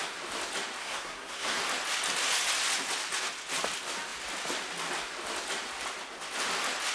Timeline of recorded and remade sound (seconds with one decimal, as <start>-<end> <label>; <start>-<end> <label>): 0.0-0.8 recorded; 0.8-1.6 remade; 1.6-6.9 recorded